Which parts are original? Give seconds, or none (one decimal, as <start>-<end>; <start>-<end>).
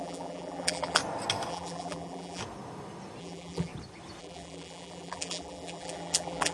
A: 1.0-1.5; 2.4-3.2; 3.7-4.2